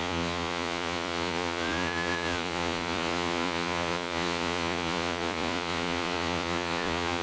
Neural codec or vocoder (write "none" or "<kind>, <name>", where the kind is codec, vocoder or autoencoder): vocoder, Vocos